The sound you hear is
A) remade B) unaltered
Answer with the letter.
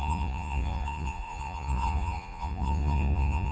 A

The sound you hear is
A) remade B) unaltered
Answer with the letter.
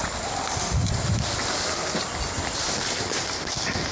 B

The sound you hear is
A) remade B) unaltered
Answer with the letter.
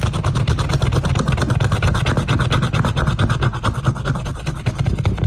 B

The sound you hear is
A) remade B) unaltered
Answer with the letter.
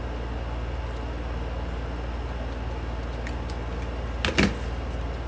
B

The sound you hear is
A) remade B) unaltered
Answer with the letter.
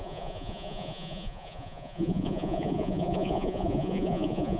A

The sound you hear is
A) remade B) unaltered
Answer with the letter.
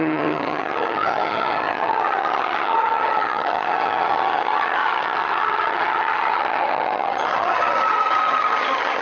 A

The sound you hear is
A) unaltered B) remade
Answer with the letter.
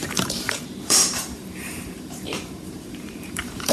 B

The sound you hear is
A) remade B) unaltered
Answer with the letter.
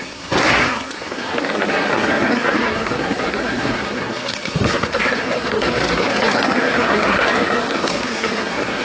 A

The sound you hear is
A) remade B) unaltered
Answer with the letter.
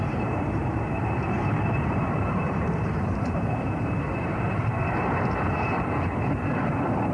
A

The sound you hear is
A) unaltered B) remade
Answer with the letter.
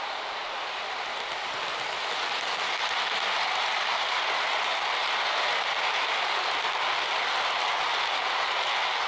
A